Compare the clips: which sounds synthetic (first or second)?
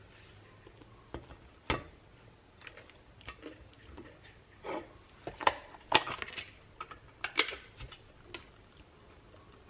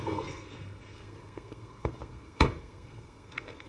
second